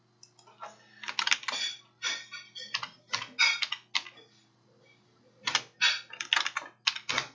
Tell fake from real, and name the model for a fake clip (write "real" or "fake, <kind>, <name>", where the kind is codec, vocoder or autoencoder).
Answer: real